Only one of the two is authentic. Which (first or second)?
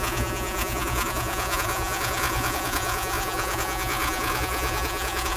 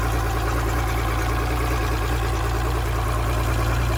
second